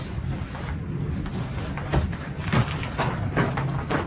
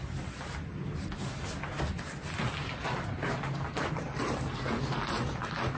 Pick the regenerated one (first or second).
first